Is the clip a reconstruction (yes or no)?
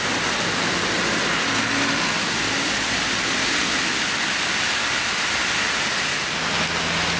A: no